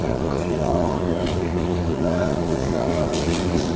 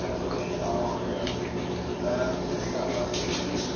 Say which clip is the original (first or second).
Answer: second